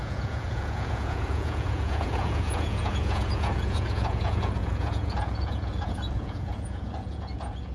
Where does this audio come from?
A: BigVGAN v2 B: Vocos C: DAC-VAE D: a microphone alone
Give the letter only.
B